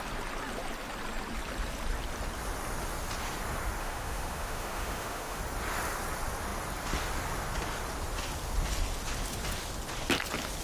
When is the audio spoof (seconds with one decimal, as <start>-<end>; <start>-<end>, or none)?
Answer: 3.8-5.4